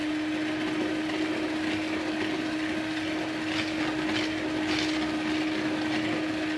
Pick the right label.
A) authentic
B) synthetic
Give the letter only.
A